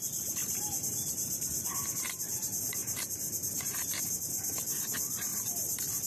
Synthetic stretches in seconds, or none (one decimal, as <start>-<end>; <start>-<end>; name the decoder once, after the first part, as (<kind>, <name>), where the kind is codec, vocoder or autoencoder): 0.4-1.9 (vocoder, BigVGAN v2); 5.3-6.1